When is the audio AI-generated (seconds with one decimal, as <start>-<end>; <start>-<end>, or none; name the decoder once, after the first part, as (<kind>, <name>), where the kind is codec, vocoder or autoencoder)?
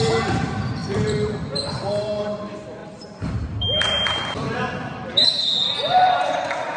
0.0-6.8 (vocoder, BigVGAN v2)